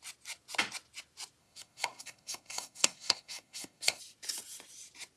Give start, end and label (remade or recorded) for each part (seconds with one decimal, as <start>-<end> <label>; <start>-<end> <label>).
0.0-1.4 recorded; 1.4-4.0 remade; 4.0-5.2 recorded